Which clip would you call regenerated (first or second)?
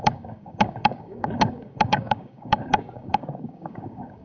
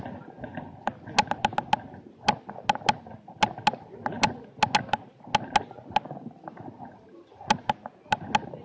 first